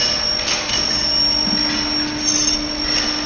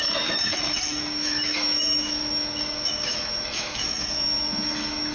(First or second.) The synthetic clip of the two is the second